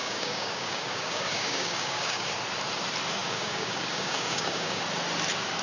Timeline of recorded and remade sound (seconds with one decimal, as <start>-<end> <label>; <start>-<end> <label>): 0.0-2.3 remade; 2.3-3.2 recorded; 3.2-4.8 remade; 4.8-5.6 recorded

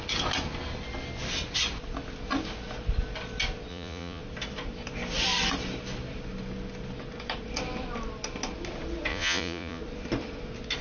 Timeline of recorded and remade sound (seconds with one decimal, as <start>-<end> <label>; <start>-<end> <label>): 0.0-3.7 recorded; 3.7-4.2 remade; 4.2-9.1 recorded; 9.1-9.8 remade; 9.8-10.8 recorded